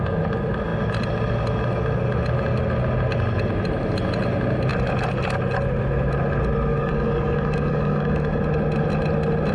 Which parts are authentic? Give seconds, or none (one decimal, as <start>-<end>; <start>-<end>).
0.0-6.7; 8.4-9.5